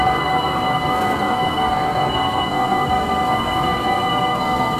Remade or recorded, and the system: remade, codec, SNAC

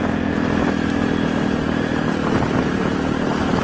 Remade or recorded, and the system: recorded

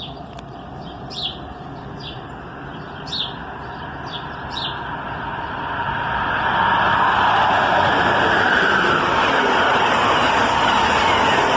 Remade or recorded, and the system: recorded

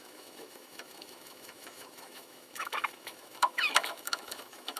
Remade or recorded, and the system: remade, autoencoder, DAC-VAE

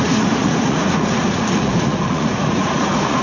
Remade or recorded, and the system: remade, vocoder, Vocos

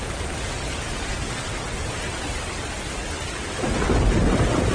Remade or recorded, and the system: recorded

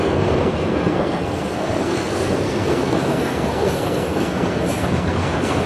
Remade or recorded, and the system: remade, codec, SNAC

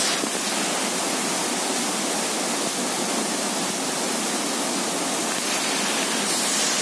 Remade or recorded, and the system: recorded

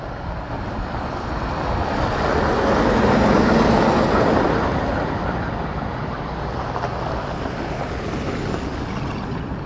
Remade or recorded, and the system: recorded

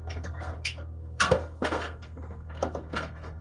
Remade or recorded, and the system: remade, codec, SNAC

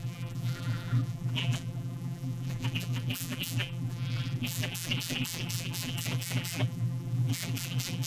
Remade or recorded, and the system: remade, vocoder, BigVGAN v2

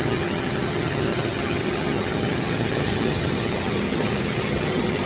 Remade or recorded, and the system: remade, vocoder, HiFi-GAN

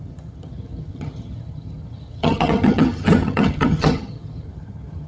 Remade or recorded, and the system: remade, vocoder, HiFi-GAN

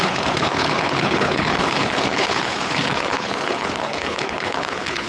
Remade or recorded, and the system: remade, codec, HILCodec